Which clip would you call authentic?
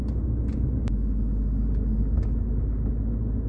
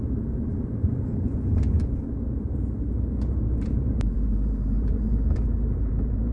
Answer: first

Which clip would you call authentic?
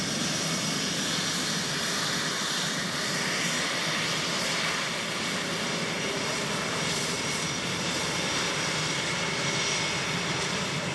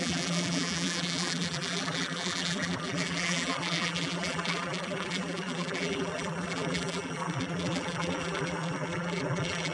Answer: first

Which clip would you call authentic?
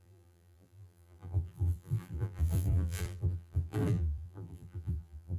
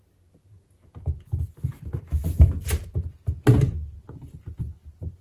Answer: second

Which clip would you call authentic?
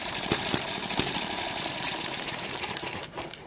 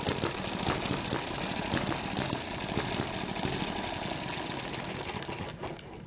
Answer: second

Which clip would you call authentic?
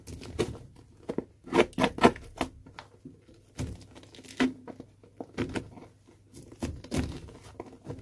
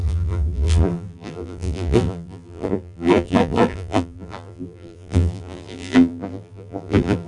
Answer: first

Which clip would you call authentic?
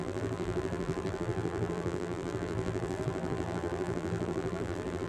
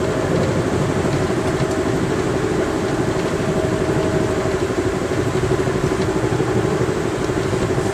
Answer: second